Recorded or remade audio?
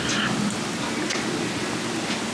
recorded